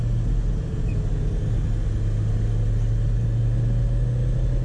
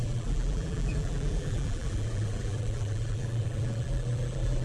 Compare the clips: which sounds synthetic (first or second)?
second